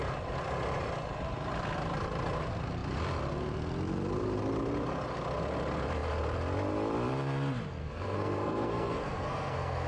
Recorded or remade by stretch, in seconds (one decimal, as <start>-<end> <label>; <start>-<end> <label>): 0.0-7.8 recorded; 7.8-9.9 remade

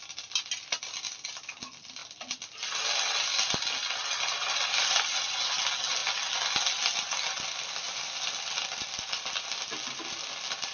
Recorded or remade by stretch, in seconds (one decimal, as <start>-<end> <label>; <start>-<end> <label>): 0.0-10.7 recorded

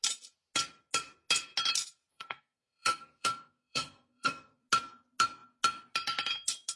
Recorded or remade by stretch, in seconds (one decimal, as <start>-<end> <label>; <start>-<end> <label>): 0.0-2.1 recorded; 2.1-4.6 remade; 4.6-6.8 recorded

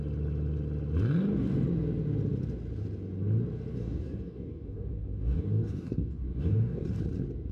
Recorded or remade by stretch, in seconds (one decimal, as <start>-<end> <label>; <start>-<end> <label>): 0.0-3.7 recorded; 3.7-7.0 remade; 7.0-7.5 recorded

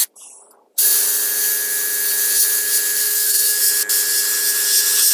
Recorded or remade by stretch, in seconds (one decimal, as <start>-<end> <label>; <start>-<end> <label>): 0.0-3.0 recorded; 3.0-3.6 remade; 3.6-5.1 recorded